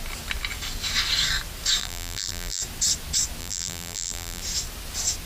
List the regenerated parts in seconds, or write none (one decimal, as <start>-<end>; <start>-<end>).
1.8-2.6; 3.4-4.4